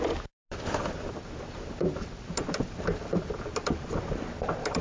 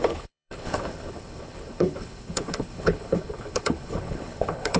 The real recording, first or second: first